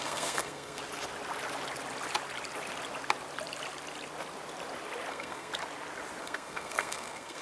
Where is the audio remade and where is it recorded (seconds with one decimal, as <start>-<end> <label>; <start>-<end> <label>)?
0.0-0.8 remade; 0.8-5.1 recorded; 5.1-5.5 remade; 5.5-6.2 recorded; 6.2-7.4 remade